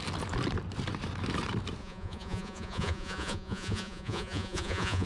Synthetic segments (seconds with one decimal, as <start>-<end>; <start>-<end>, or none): 1.8-5.1